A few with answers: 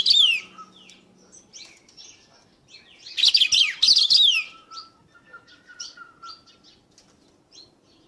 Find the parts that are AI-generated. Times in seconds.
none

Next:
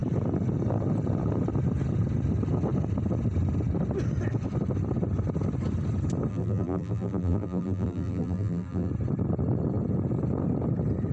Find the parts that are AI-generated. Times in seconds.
6.3-8.9 (vocoder, BigVGAN v2)

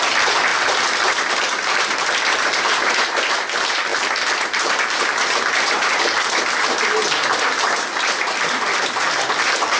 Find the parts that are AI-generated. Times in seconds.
0.0-7.0 (vocoder, BigVGAN v2); 8.0-9.8

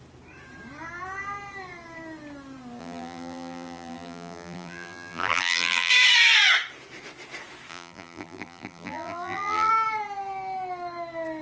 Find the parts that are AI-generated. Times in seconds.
2.8-5.9 (vocoder, BigVGAN v2); 7.7-9.7

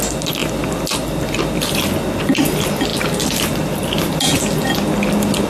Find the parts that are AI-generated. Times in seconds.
none

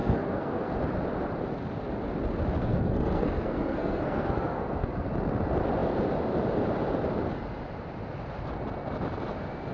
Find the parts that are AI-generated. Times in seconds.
0.0-0.8 (codec, SNAC); 2.6-5.1